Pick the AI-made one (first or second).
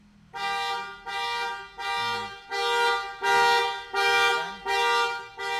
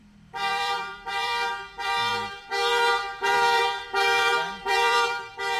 second